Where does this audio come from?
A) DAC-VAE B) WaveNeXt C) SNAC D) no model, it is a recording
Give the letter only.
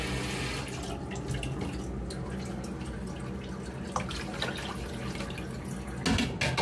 D